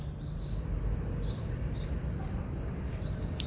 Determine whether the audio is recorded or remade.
recorded